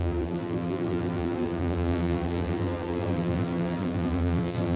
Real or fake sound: fake